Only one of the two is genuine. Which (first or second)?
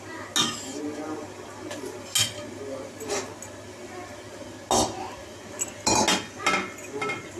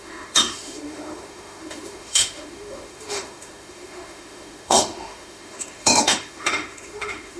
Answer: first